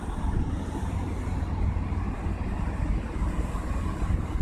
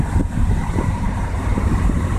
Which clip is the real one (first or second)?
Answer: first